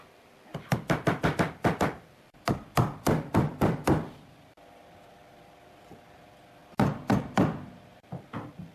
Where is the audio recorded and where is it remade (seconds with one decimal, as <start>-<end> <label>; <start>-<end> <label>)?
0.0-8.7 remade